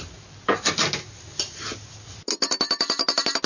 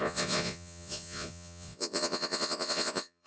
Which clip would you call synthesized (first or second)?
second